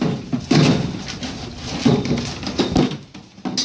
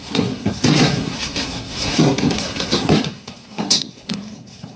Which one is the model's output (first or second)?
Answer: second